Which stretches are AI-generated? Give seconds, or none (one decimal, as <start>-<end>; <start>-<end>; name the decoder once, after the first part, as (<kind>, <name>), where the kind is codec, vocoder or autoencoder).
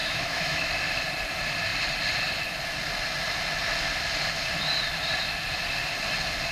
0.0-0.7 (autoencoder, DAC-VAE)